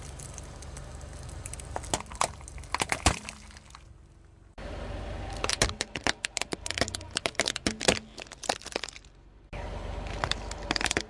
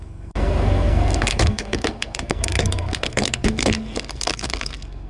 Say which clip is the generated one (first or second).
second